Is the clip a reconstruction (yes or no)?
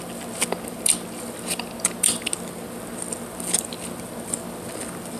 no